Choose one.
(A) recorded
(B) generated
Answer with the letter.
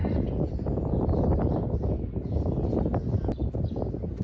A